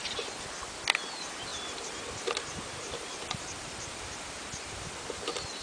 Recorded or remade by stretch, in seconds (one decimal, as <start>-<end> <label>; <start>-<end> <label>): 0.0-1.5 recorded; 1.5-4.9 remade; 4.9-5.6 recorded